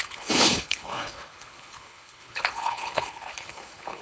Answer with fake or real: fake